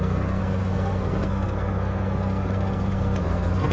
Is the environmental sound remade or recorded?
remade